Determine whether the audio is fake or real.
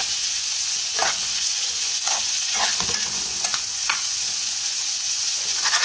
fake